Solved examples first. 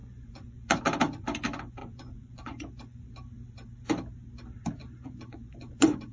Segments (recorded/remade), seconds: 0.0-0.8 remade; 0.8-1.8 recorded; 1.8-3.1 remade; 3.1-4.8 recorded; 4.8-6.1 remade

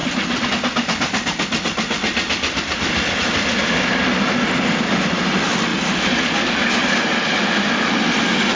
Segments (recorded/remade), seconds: 0.0-8.6 recorded

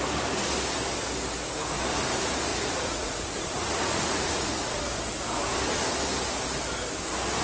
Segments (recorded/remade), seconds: 0.0-2.5 recorded; 2.5-4.9 remade; 4.9-7.4 recorded